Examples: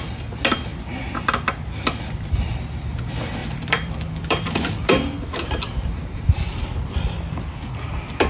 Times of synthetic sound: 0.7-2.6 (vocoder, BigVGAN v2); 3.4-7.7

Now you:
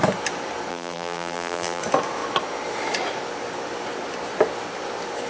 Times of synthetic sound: 0.7-1.8 (vocoder, BigVGAN v2)

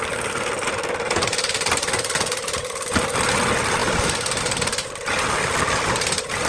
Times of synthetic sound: 3.8-4.4 (vocoder, BigVGAN v2)

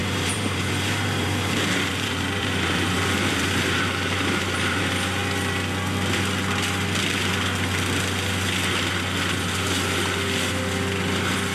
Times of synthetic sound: 0.0-4.8 (vocoder, BigVGAN v2)

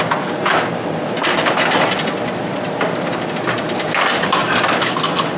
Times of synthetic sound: 4.4-5.0 (vocoder, BigVGAN v2)

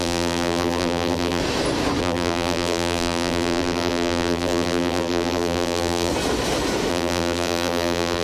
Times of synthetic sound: 0.0-1.4 (vocoder, BigVGAN v2); 2.0-6.1; 6.9-8.2

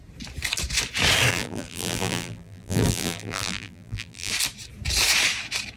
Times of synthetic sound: 1.3-4.3 (vocoder, BigVGAN v2)